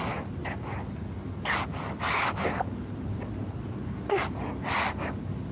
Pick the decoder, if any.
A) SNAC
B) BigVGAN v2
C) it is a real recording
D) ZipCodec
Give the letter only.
C